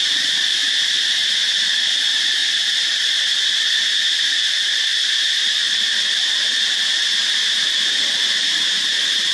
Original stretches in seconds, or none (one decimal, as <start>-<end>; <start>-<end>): 1.2-1.9